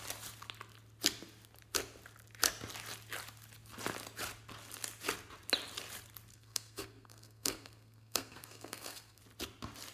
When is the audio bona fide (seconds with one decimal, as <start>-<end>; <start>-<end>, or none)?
0.0-6.3; 9.2-9.9